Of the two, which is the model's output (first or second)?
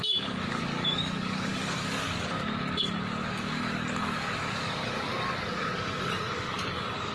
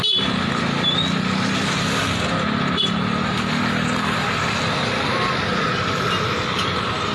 first